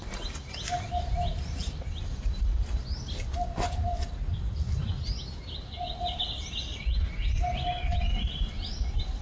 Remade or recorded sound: recorded